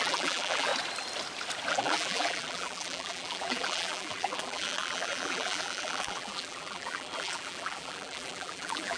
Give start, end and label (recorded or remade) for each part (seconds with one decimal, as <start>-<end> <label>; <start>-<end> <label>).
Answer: 0.0-0.7 remade; 0.7-1.7 recorded; 1.7-9.0 remade